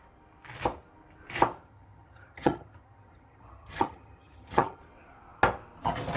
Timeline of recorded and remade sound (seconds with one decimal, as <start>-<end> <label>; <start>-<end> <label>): 0.0-1.6 recorded; 1.6-4.8 remade; 4.8-6.2 recorded